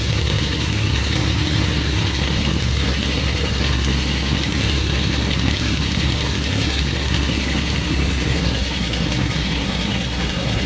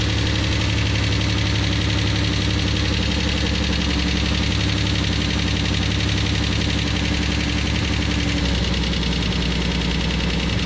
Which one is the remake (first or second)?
first